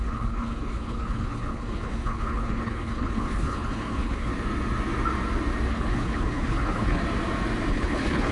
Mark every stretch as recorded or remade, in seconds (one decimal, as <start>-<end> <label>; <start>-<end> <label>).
0.0-4.3 remade; 4.3-5.7 recorded; 5.7-7.0 remade; 7.0-7.7 recorded; 7.7-8.3 remade